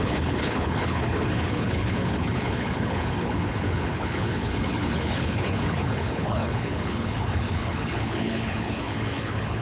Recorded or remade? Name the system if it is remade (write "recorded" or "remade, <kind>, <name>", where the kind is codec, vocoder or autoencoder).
remade, codec, HILCodec